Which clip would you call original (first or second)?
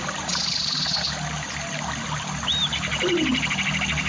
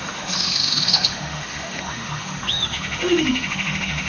first